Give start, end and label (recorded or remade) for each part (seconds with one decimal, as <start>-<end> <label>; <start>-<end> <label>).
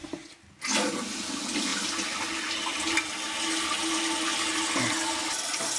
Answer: 0.0-5.8 recorded